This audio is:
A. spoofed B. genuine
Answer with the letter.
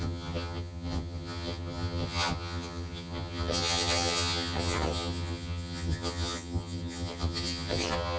A